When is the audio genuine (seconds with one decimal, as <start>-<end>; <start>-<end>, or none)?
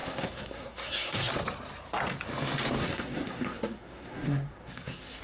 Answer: 1.3-2.8